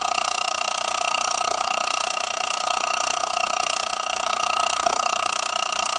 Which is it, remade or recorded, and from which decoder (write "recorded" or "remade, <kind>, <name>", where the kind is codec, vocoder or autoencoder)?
remade, codec, HILCodec